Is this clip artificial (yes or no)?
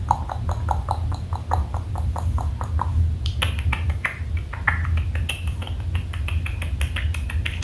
no